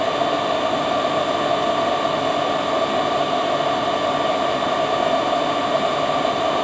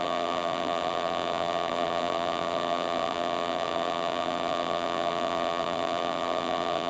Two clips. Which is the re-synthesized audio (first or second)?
second